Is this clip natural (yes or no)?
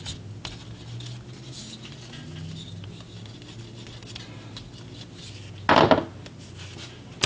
yes